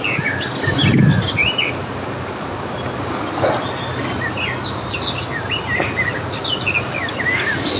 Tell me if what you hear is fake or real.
real